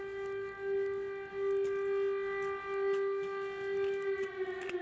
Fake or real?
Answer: real